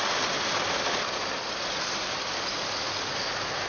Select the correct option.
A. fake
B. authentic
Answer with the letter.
B